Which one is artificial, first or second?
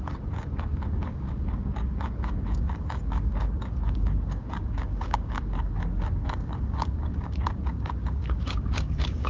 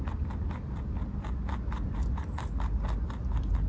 first